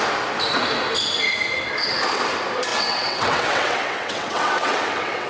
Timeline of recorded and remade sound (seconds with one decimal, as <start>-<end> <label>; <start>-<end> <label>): 0.0-2.7 recorded; 2.7-5.3 remade